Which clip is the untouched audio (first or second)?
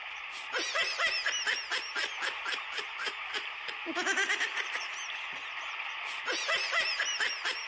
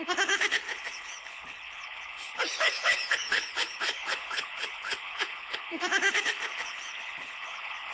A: first